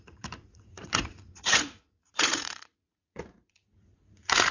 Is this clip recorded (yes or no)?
no